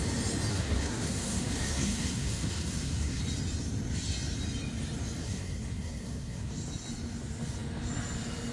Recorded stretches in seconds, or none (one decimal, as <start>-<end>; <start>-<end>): 0.0-0.5; 3.2-5.2; 6.5-8.5